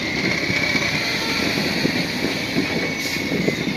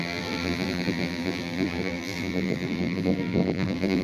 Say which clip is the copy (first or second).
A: second